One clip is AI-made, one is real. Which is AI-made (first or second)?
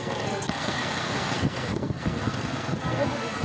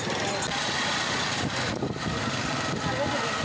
first